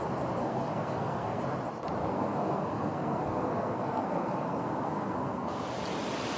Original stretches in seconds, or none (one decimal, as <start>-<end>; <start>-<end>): 0.0-0.4; 1.4-2.0; 5.6-6.4